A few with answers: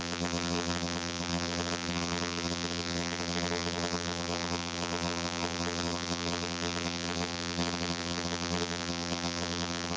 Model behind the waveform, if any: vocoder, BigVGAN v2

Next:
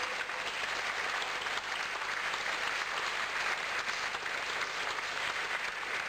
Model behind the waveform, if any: none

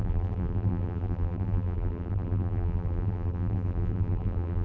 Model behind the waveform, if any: vocoder, BigVGAN v2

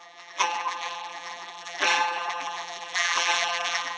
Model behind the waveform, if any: vocoder, BigVGAN v2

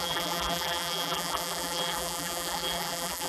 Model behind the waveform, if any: vocoder, BigVGAN v2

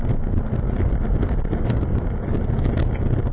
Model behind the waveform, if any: none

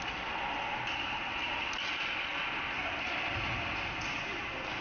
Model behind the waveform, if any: none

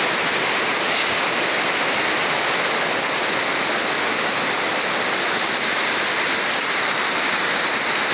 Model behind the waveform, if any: none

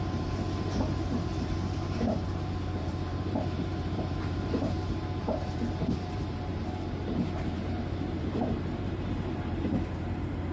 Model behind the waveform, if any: vocoder, BigVGAN v2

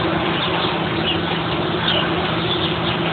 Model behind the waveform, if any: none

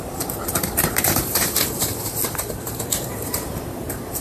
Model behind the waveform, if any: vocoder, BigVGAN v2